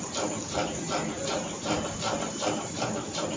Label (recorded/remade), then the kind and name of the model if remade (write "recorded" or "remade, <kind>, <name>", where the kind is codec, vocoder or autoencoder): recorded